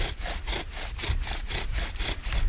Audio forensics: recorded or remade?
recorded